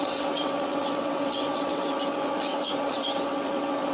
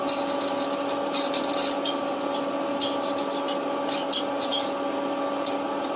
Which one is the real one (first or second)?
second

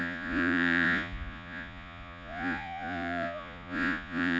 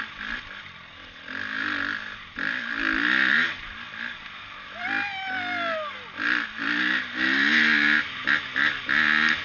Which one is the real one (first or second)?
second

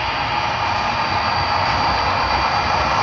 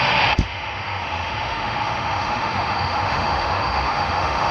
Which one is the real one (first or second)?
first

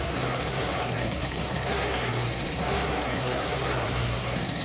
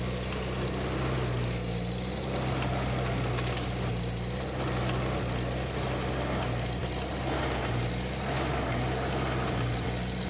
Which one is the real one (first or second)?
second